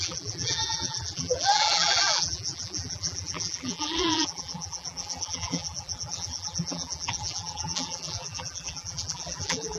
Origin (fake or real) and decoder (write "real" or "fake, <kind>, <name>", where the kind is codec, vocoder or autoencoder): fake, vocoder, BigVGAN v2